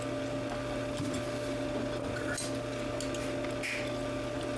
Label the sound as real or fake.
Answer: real